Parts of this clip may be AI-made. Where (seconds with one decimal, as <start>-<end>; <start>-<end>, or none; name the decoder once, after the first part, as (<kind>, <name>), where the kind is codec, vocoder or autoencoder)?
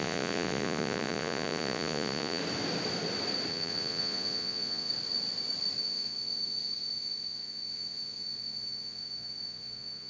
0.0-2.4 (vocoder, Vocos); 3.5-4.9; 5.8-10.1